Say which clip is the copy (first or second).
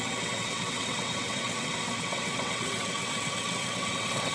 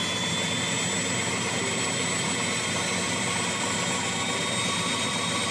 first